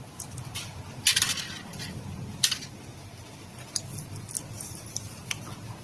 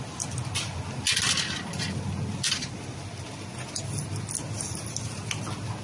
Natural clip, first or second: second